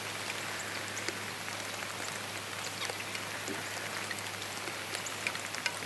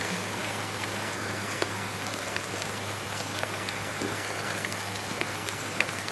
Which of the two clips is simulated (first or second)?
second